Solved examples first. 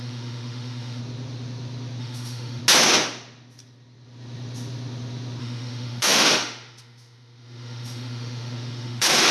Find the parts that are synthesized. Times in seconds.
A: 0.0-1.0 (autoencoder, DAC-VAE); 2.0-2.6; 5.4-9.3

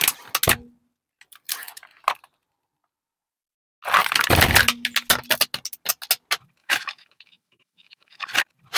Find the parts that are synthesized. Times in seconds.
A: 6.6-8.2 (autoencoder, DAC-VAE)

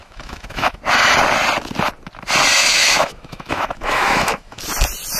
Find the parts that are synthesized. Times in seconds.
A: 0.0-0.8 (autoencoder, DAC-VAE); 2.6-4.6